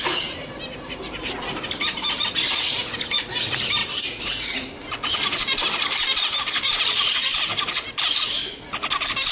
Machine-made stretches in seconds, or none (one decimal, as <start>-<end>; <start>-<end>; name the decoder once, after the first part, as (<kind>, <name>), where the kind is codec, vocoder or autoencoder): 0.0-8.4 (vocoder, BigVGAN v2)